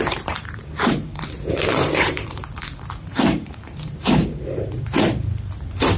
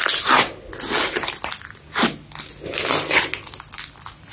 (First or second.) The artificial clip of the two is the first